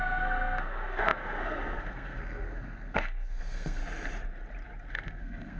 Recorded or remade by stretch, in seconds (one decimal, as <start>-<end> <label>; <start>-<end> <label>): 0.0-3.8 remade; 3.8-4.9 recorded; 4.9-5.6 remade